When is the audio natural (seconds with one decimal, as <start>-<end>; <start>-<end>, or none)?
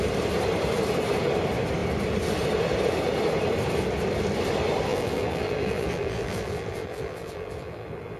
0.0-4.9